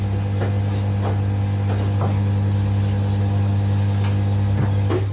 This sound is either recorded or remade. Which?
recorded